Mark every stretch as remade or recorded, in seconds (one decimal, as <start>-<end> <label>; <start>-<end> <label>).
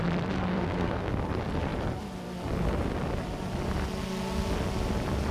0.0-0.5 recorded; 0.5-1.1 remade; 1.1-5.3 recorded